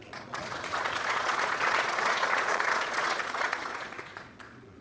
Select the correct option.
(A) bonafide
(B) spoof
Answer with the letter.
B